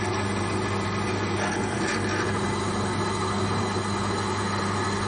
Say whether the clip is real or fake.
real